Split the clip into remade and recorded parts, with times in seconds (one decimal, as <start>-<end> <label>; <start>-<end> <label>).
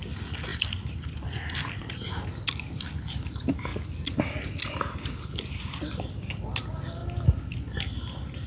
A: 0.0-8.5 recorded